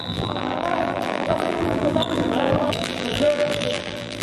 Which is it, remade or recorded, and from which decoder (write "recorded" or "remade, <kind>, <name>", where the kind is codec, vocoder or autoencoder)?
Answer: remade, vocoder, BigVGAN v2